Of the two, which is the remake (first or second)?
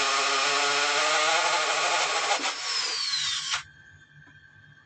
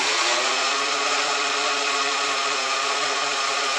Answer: second